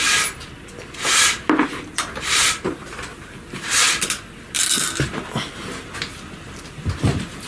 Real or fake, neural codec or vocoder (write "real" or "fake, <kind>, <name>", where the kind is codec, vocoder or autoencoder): fake, vocoder, BigVGAN v2